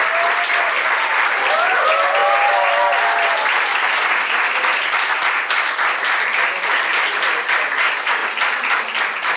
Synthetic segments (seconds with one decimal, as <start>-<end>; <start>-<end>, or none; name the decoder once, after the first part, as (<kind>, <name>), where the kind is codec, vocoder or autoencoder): none